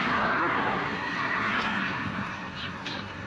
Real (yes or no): no